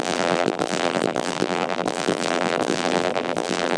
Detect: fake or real fake